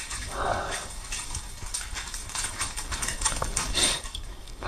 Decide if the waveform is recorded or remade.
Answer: remade